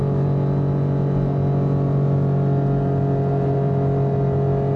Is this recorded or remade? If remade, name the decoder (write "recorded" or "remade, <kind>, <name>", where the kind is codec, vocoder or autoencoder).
recorded